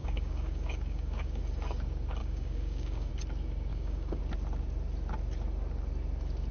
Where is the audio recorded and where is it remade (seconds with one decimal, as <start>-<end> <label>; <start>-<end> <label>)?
0.0-1.4 remade; 1.4-2.2 recorded; 2.2-3.1 remade; 3.1-3.7 recorded; 3.7-4.2 remade; 4.2-6.5 recorded